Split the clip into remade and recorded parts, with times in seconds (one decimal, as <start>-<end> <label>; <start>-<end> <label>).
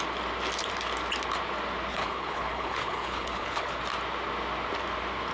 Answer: 0.0-1.9 recorded; 1.9-3.8 remade; 3.8-5.3 recorded